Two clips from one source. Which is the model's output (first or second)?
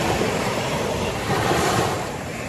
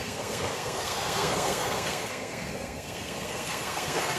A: second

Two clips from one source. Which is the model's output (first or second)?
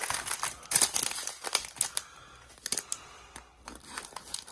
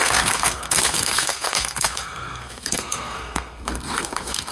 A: second